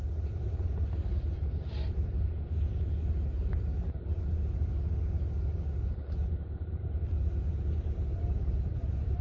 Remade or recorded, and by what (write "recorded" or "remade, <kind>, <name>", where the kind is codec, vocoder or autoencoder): remade, vocoder, BigVGAN v2